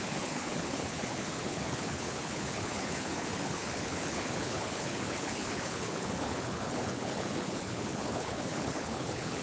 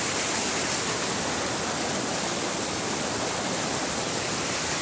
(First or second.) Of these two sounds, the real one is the second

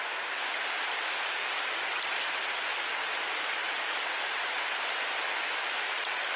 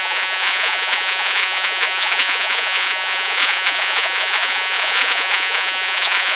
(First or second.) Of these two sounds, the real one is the first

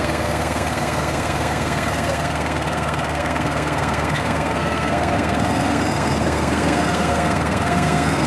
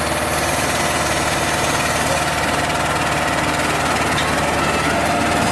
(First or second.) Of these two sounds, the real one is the second